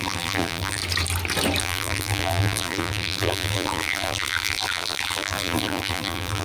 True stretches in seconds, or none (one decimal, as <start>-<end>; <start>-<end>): 0.8-1.6